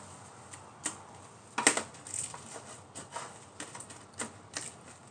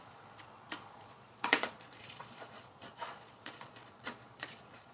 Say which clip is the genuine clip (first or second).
first